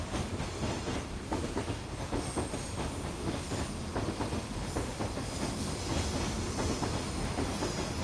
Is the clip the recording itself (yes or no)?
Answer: yes